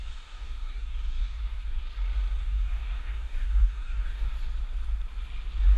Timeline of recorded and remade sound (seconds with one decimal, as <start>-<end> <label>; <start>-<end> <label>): 0.0-1.8 remade; 1.8-2.4 recorded; 2.4-4.3 remade; 4.3-5.8 recorded